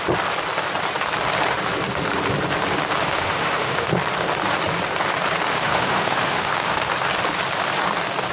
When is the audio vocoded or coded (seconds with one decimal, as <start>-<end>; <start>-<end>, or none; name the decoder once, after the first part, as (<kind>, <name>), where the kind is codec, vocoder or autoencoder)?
3.0-4.0 (autoencoder, DAC-VAE); 5.5-6.9